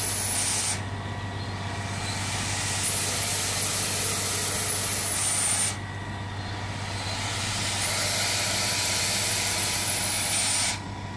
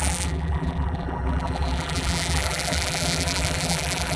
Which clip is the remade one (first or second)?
second